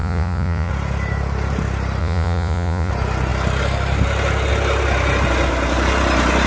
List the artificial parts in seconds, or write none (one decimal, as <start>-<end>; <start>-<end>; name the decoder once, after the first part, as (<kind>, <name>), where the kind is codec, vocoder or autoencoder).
0.0-0.7 (vocoder, Vocos); 2.0-2.9